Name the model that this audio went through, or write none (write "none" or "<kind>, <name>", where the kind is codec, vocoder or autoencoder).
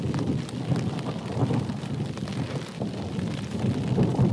none